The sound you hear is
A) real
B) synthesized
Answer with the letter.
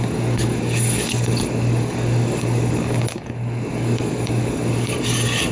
B